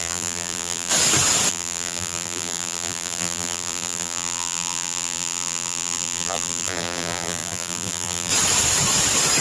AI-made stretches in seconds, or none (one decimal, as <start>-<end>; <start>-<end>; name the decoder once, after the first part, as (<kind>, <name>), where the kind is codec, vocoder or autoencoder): 0.0-0.9 (vocoder, BigVGAN v2); 1.5-8.3